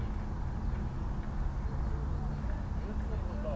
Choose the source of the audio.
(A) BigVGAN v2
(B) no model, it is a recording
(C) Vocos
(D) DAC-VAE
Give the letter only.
B